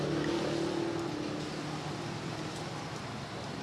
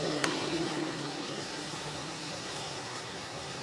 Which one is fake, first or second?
second